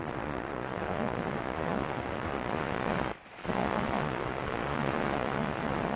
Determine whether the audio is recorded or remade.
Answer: remade